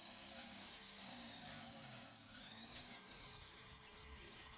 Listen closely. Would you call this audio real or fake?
fake